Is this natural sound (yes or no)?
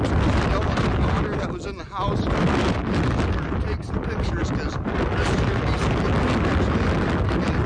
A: yes